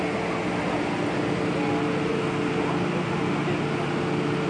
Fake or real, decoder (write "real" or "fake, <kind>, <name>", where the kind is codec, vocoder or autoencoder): real